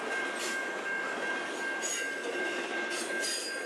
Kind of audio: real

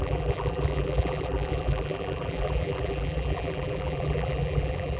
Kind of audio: fake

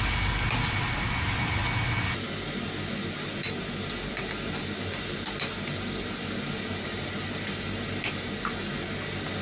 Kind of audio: real